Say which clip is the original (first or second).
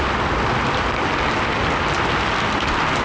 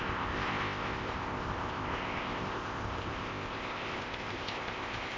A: first